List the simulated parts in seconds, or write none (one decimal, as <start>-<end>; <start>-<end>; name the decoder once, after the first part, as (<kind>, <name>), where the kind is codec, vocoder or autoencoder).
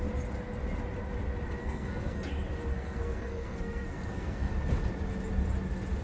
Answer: 1.6-2.3 (codec, SNAC); 2.7-4.5